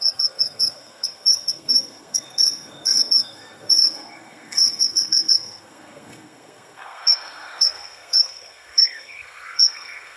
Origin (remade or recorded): remade